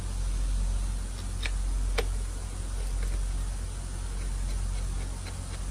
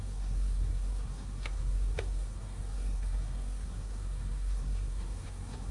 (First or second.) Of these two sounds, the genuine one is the first